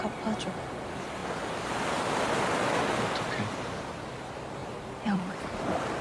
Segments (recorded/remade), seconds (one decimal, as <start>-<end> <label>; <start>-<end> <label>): 0.0-1.2 remade; 1.2-4.1 recorded; 4.1-6.0 remade